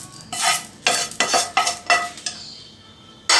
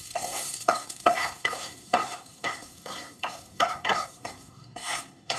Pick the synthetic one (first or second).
second